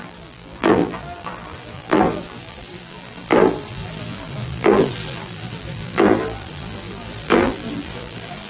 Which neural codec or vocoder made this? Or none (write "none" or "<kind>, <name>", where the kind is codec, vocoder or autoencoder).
vocoder, BigVGAN v2